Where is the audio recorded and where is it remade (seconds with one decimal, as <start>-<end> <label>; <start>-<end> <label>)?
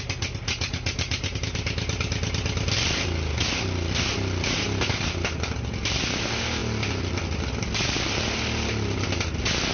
0.0-9.7 recorded